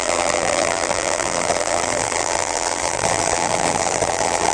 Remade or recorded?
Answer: remade